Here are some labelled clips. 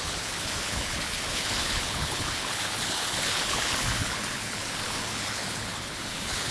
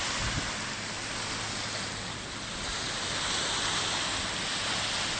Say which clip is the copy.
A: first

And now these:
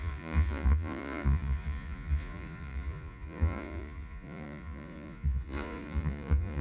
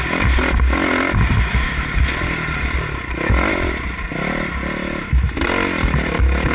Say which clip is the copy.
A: first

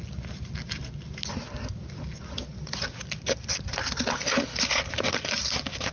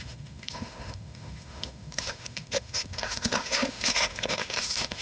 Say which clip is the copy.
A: second